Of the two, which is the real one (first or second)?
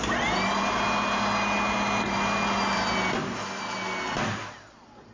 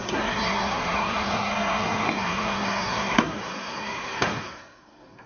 first